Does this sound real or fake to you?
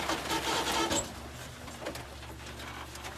real